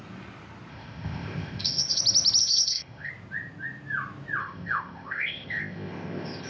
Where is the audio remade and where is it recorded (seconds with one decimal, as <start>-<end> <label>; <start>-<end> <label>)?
0.0-0.7 recorded; 0.7-2.0 remade; 2.0-2.4 recorded; 2.4-3.1 remade; 3.1-4.4 recorded; 4.4-6.5 remade